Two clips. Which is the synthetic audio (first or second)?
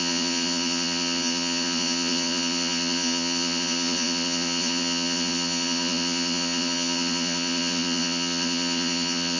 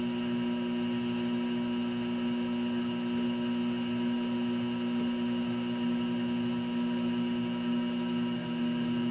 first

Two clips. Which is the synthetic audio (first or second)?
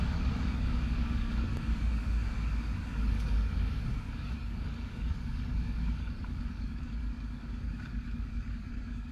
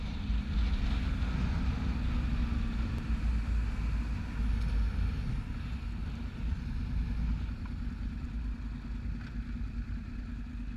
first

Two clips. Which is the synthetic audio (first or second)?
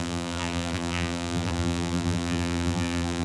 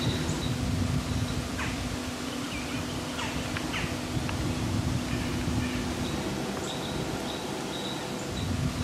first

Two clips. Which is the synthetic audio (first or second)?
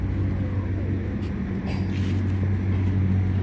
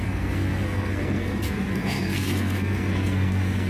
second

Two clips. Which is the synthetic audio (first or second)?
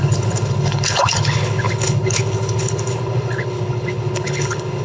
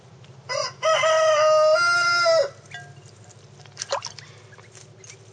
first